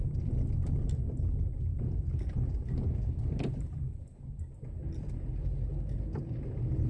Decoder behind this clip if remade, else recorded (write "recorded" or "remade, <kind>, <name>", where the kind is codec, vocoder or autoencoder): recorded